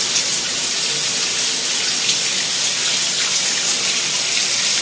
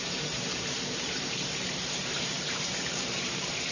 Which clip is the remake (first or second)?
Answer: second